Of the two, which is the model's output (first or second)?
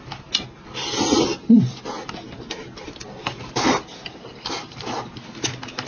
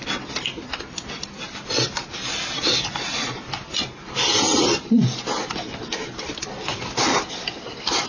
second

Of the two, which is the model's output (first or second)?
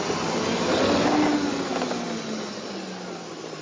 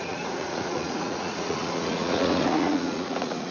second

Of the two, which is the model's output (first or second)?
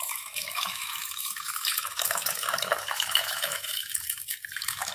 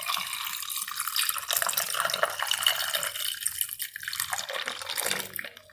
first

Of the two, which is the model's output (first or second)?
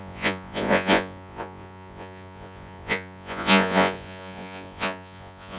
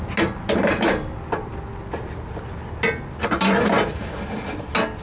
first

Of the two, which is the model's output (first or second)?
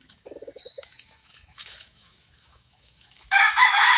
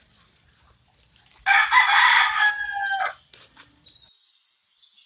first